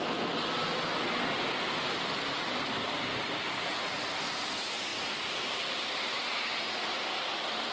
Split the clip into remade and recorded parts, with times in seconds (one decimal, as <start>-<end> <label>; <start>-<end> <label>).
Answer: 0.0-7.7 recorded